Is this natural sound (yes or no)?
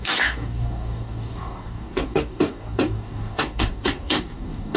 no